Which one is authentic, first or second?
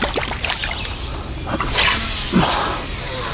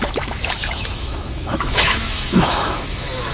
first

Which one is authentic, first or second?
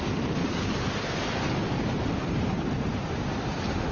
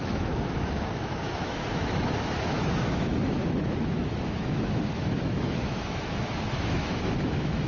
first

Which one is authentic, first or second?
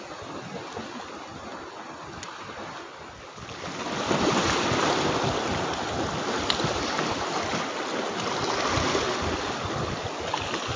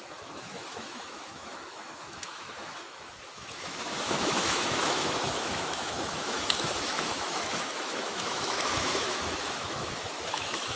first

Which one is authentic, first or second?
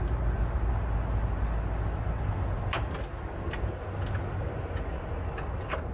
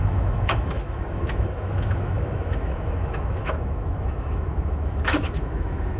first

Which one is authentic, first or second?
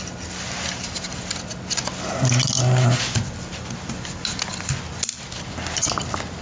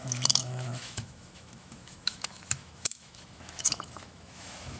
first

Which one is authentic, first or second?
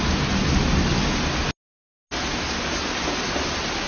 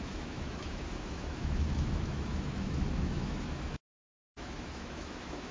first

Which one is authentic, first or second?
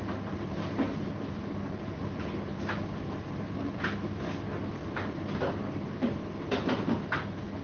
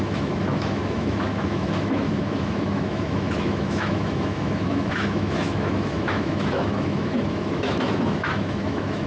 first